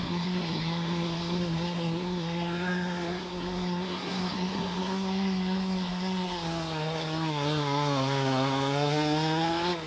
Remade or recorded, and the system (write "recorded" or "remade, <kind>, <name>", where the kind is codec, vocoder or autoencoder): remade, codec, SNAC